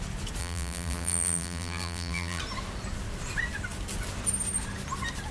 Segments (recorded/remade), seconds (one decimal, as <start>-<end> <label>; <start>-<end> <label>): 0.0-0.4 recorded; 0.4-2.4 remade; 2.4-5.3 recorded